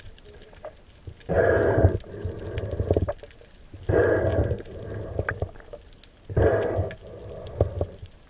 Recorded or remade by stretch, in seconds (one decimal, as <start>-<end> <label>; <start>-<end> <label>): 0.0-8.3 recorded